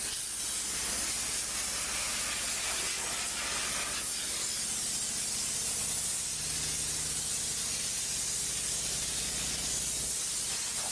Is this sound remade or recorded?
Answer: recorded